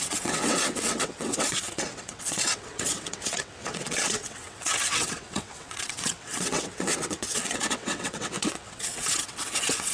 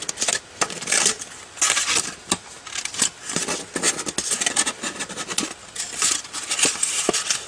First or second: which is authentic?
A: second